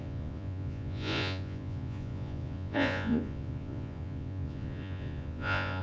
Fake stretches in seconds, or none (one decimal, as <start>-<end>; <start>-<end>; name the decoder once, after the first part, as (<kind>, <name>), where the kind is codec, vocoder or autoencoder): 0.0-5.8 (vocoder, Vocos)